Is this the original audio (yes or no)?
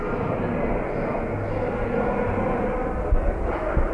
yes